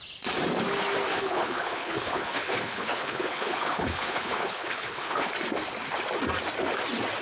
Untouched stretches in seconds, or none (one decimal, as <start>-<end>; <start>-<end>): 0.0-1.1; 5.3-7.2